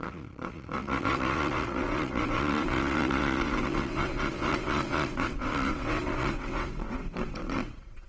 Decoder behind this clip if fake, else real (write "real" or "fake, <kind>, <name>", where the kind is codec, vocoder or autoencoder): fake, vocoder, WaveNeXt